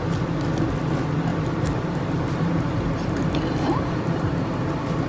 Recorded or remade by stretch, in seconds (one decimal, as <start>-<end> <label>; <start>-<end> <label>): 0.0-1.3 recorded; 1.3-4.4 remade; 4.4-5.1 recorded